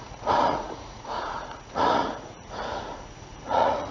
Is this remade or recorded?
remade